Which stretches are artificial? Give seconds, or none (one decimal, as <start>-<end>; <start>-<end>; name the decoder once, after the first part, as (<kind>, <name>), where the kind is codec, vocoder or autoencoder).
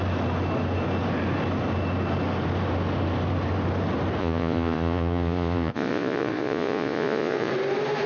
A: 4.2-7.5 (vocoder, Vocos)